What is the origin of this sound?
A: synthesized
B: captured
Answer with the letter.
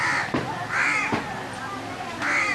B